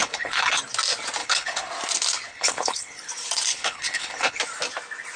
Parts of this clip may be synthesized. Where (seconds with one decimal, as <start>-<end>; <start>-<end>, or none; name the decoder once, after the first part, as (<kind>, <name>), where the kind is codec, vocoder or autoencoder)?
0.0-0.6 (codec, HILCodec); 1.2-1.7; 2.3-3.1; 3.5-4.4